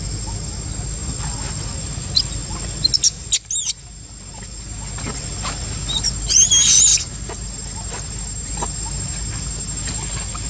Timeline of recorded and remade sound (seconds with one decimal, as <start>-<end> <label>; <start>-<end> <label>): 0.0-10.5 recorded